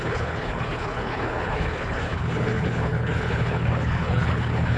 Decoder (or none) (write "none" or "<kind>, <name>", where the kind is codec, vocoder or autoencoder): codec, HILCodec